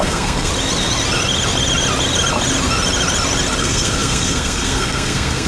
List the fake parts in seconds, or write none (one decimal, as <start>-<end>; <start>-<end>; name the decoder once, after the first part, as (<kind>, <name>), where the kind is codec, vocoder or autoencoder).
0.0-0.5 (codec, SNAC); 3.6-5.5